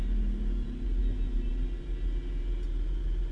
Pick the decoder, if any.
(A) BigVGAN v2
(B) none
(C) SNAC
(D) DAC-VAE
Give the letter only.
B